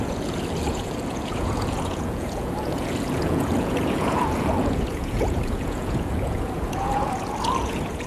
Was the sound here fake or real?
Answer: fake